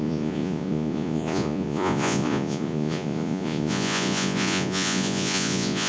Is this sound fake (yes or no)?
yes